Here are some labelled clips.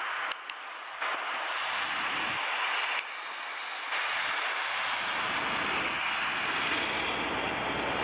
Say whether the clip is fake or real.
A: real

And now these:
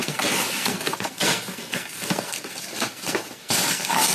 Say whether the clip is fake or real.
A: fake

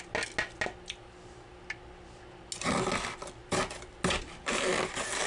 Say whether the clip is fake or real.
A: real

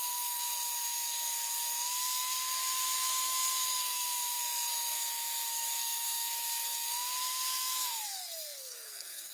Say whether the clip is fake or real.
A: fake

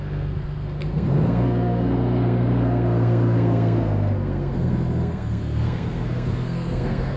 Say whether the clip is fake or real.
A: fake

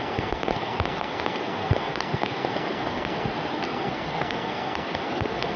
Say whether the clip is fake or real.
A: fake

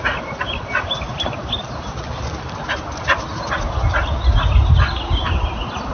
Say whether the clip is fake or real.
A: real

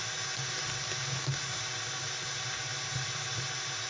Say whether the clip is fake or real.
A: real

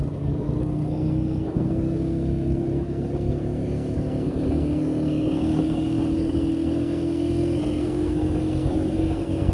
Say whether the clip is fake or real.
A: fake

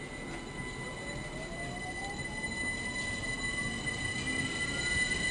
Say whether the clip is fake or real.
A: real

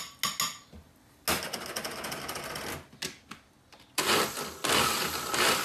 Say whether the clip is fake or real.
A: real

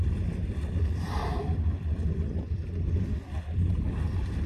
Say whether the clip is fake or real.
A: real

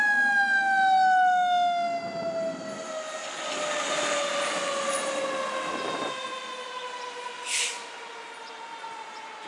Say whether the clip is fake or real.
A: real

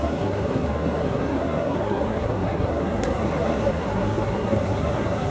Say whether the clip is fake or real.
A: fake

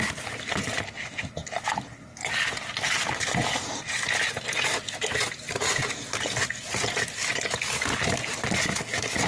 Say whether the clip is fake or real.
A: real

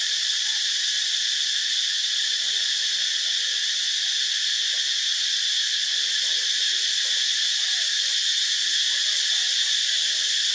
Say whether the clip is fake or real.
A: real